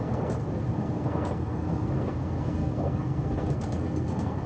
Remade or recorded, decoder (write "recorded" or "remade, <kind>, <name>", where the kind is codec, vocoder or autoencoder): remade, codec, SNAC